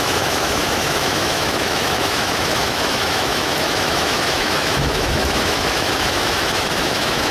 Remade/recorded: remade